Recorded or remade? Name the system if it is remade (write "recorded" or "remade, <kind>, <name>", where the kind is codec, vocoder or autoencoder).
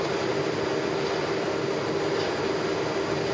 recorded